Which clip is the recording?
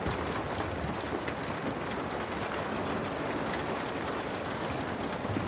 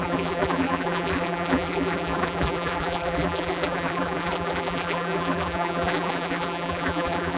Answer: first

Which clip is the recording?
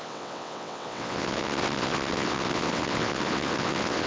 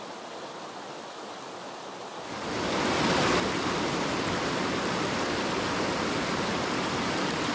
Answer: second